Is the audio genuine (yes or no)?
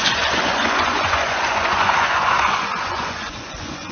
no